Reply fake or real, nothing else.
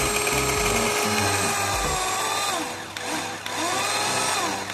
real